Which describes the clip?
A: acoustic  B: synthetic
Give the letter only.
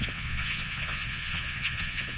B